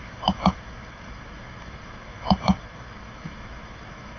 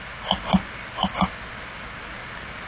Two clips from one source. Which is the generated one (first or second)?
first